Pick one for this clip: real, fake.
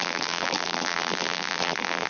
fake